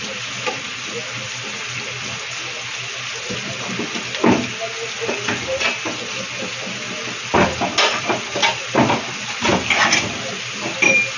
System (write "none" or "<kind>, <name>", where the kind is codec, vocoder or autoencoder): none